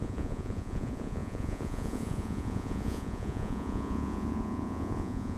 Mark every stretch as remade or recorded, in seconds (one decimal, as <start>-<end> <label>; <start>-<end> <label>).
0.0-5.4 remade